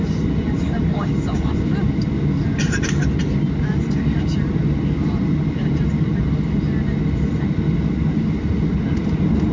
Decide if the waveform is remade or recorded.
recorded